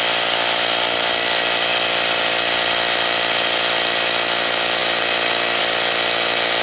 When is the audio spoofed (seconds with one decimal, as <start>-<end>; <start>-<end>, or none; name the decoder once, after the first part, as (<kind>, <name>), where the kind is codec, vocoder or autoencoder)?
none